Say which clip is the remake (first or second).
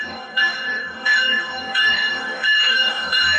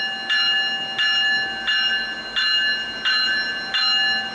first